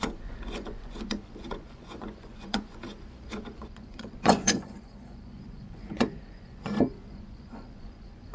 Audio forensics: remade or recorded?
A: remade